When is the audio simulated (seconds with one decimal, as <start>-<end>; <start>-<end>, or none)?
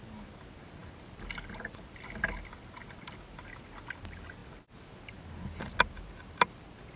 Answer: none